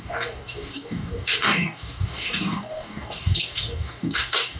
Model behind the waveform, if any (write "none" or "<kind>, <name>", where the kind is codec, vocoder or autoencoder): codec, DAC